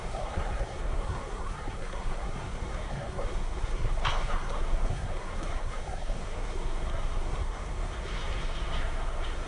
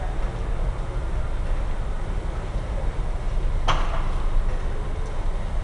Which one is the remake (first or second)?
first